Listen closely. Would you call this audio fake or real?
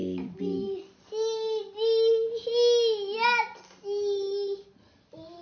real